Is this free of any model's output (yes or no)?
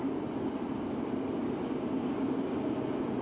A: yes